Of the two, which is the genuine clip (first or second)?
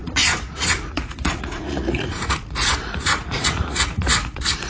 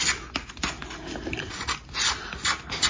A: second